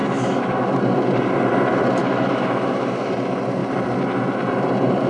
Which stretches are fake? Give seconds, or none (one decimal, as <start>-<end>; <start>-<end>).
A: 0.0-0.8; 2.0-3.1